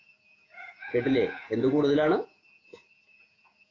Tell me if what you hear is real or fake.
fake